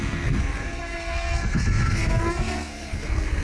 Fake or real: fake